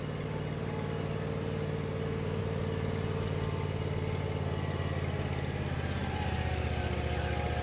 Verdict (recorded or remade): recorded